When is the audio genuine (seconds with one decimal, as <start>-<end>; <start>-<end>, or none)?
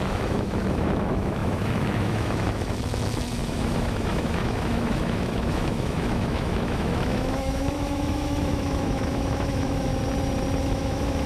9.9-10.6